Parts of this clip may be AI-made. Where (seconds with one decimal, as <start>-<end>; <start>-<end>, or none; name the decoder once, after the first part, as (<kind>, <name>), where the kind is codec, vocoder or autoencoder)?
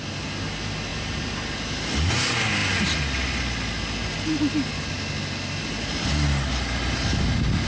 none